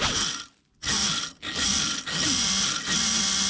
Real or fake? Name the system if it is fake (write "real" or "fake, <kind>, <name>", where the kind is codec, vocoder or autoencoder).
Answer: real